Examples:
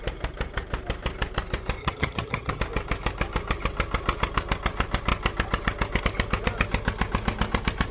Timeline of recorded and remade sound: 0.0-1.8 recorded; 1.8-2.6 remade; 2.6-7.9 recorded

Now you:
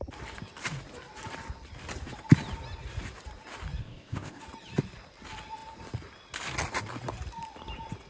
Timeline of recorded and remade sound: 0.0-3.8 recorded; 3.8-4.4 remade; 4.4-8.1 recorded

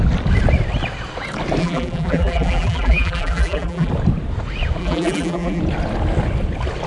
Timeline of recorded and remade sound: 0.0-1.6 recorded; 1.6-3.9 remade; 3.9-4.8 recorded; 4.8-5.6 remade; 5.6-6.9 recorded